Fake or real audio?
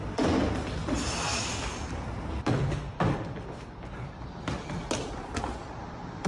real